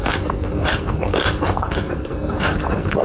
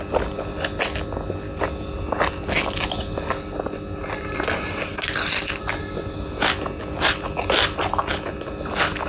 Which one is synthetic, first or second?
first